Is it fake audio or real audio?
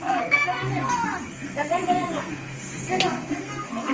fake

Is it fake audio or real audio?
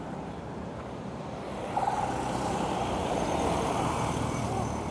fake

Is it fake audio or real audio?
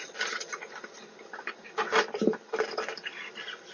real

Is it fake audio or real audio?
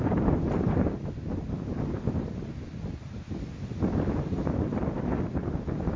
real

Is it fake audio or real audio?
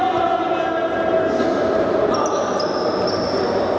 real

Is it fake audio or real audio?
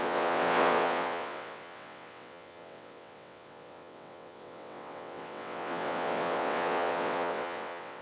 fake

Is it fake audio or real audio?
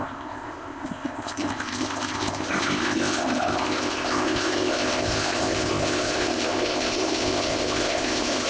fake